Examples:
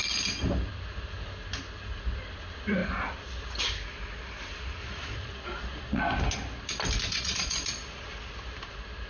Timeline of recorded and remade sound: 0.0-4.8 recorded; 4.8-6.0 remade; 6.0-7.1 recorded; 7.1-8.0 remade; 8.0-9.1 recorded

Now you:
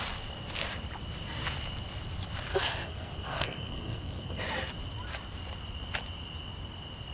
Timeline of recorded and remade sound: 0.0-2.5 recorded; 2.5-4.4 remade; 4.4-7.1 recorded